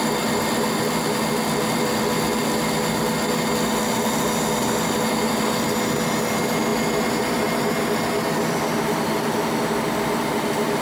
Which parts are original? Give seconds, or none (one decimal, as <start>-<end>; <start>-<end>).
0.0-10.8